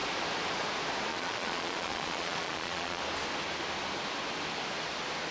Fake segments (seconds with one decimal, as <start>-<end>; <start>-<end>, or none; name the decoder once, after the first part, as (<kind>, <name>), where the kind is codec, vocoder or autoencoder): 1.1-3.0 (vocoder, Vocos)